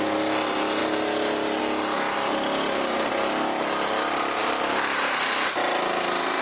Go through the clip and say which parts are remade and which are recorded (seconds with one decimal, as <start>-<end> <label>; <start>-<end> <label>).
0.0-4.4 recorded; 4.4-5.6 remade; 5.6-6.4 recorded